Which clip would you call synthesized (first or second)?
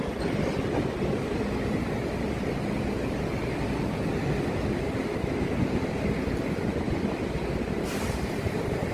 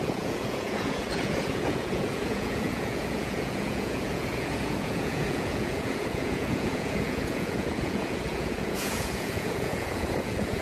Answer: second